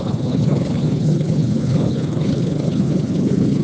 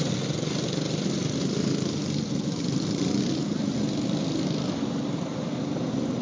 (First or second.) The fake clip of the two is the first